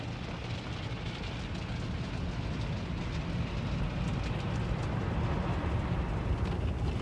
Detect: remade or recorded recorded